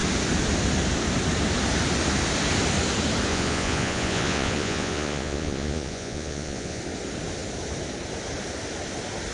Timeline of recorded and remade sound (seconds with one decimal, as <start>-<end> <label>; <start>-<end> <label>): 0.0-3.3 recorded; 3.3-6.8 remade; 6.8-9.3 recorded